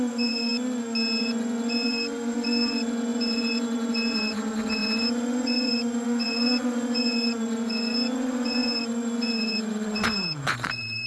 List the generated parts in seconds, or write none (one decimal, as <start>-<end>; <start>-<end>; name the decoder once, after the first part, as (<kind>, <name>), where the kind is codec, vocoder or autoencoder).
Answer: 0.0-0.5 (vocoder, Vocos); 1.2-11.1